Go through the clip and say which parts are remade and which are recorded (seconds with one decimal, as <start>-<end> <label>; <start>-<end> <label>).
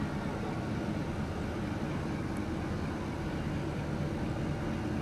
0.0-5.0 recorded